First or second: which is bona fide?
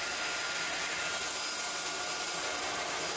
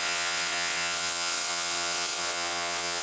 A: first